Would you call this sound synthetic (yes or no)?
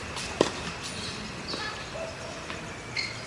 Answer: no